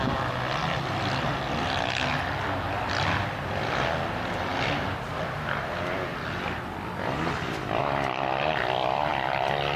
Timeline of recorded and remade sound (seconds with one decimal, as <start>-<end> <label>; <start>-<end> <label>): 0.0-9.8 recorded